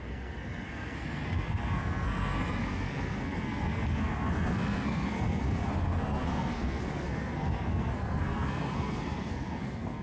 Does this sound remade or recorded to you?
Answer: remade